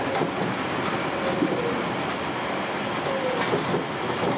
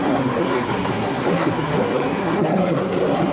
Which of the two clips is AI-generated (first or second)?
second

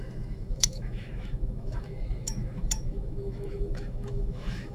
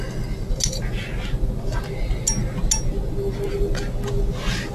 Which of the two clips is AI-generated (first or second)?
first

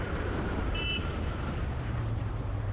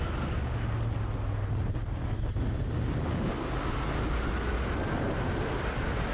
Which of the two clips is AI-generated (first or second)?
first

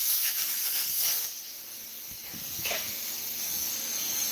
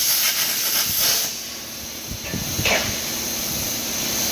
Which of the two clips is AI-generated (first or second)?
first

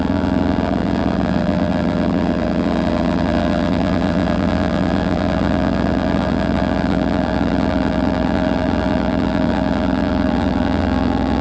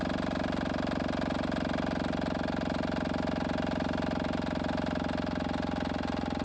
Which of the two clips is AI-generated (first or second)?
first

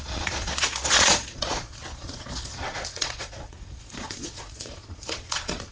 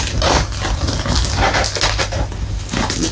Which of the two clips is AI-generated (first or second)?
first